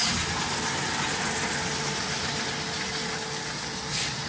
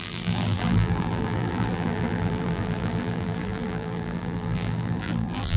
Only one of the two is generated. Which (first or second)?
second